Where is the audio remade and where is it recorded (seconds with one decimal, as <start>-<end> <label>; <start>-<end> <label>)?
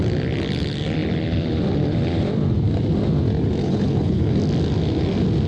0.0-3.6 recorded; 3.6-4.4 remade; 4.4-5.5 recorded